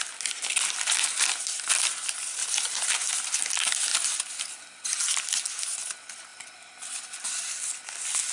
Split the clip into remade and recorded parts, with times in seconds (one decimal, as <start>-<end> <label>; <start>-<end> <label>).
0.0-2.4 recorded; 2.4-3.1 remade; 3.1-8.3 recorded